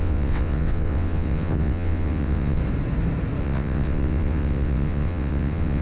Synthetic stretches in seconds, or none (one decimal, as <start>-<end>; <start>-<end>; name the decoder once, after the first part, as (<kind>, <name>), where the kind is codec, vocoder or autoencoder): 0.0-2.6 (vocoder, WaveNeXt); 3.4-5.8